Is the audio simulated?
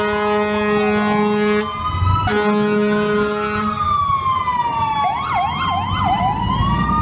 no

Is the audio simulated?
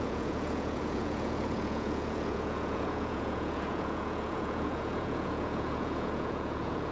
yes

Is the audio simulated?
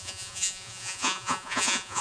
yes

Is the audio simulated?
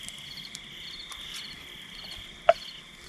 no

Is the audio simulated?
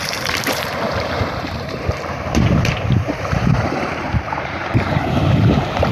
yes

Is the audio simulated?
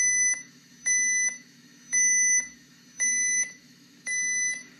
yes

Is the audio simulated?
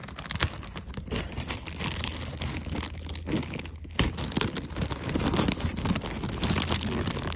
no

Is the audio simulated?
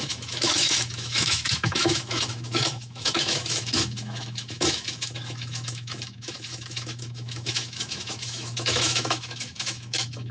yes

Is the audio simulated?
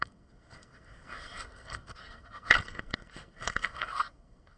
yes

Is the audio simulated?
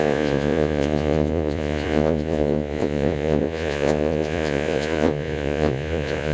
yes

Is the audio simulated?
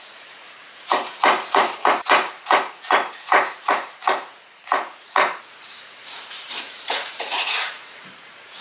yes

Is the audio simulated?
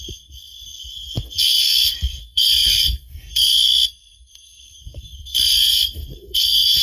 yes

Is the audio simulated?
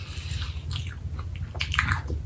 no